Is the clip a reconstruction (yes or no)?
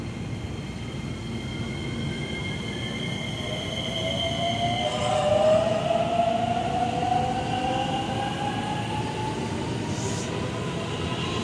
no